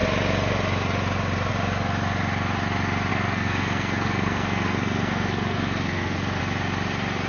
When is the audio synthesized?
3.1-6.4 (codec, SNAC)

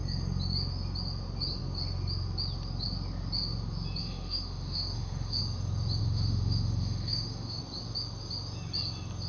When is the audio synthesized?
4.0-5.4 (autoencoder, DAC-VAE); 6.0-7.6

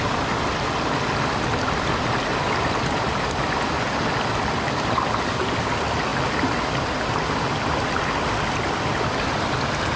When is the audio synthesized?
none

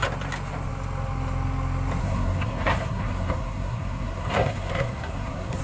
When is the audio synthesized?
2.0-5.6 (codec, SNAC)

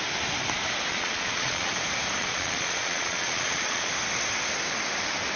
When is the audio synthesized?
0.9-1.7 (vocoder, Vocos); 2.2-3.9

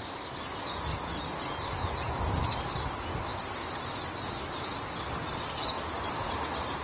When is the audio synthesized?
none

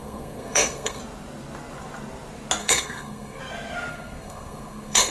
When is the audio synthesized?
0.0-1.0 (codec, SNAC); 2.6-3.4; 3.9-5.1

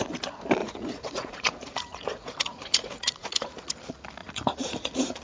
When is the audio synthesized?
0.6-3.7 (vocoder, Vocos); 4.2-5.2